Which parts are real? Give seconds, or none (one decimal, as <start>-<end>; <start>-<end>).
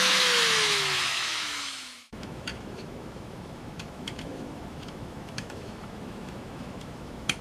none